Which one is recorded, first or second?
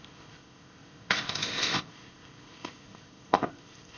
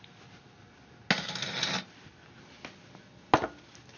second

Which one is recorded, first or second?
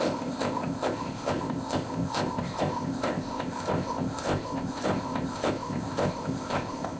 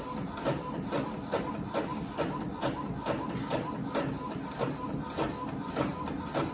second